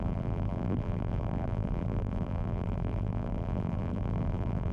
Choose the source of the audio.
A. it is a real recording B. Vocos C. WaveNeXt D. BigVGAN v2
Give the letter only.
D